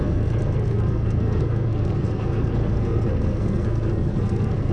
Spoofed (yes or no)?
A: yes